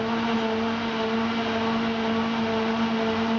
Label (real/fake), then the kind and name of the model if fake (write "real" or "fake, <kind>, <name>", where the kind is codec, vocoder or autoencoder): real